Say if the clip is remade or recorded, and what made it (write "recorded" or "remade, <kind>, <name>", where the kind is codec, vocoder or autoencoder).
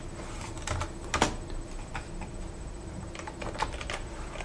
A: recorded